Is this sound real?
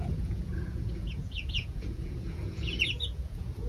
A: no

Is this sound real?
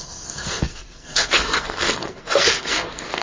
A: no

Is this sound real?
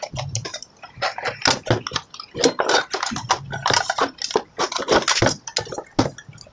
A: yes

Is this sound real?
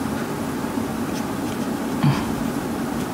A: no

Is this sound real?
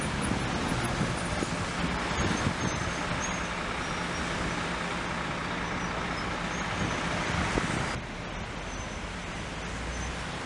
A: yes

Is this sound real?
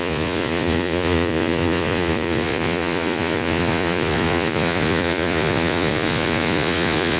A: no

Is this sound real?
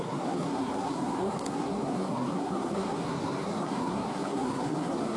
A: no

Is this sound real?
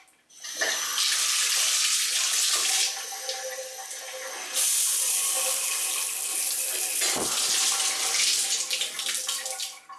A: yes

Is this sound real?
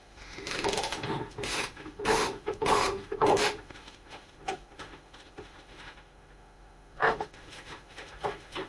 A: no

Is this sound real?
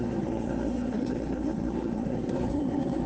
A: no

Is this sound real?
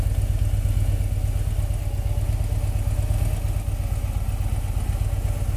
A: yes